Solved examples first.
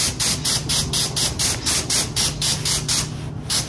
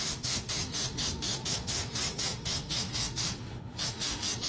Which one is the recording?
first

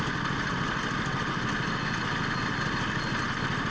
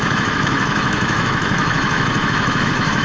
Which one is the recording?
first